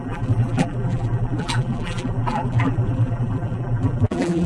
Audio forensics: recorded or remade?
remade